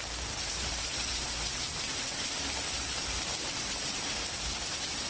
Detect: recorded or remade remade